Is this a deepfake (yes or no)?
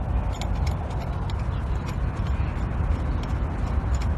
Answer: no